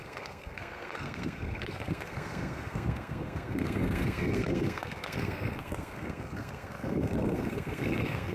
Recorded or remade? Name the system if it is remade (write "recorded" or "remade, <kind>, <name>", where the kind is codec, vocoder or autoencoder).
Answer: remade, codec, SNAC